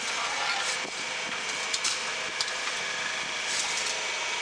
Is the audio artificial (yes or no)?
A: no